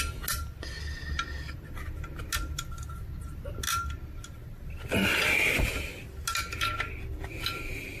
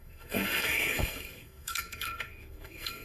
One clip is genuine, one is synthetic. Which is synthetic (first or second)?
second